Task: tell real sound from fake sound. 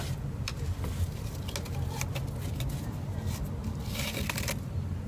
real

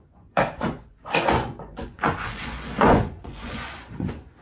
fake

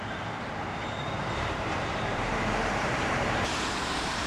fake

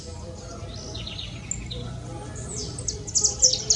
real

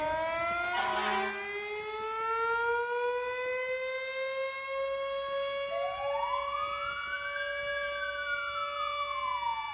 real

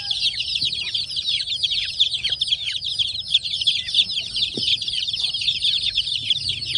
fake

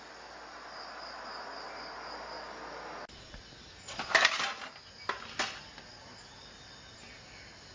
real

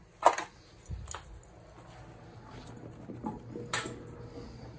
real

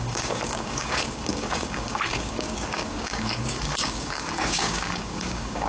fake